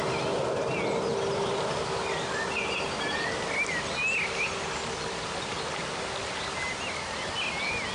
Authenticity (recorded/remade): recorded